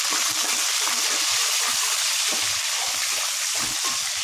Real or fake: real